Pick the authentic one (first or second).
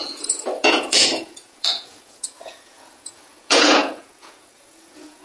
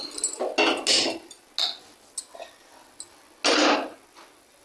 second